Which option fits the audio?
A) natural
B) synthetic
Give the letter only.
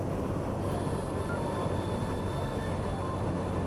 A